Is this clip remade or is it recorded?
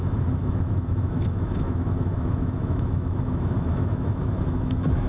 remade